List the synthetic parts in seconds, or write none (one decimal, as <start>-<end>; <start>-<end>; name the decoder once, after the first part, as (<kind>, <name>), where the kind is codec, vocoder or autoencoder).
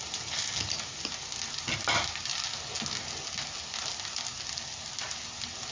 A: none